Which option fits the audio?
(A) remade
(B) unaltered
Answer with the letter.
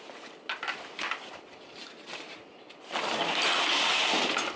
B